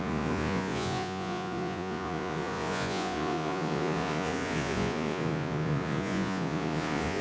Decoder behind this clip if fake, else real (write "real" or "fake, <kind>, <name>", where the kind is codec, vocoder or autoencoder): fake, vocoder, Vocos